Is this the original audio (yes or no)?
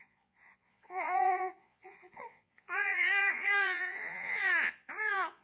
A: no